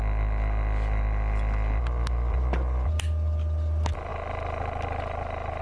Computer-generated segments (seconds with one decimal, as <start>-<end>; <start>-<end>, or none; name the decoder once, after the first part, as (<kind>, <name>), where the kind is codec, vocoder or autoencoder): none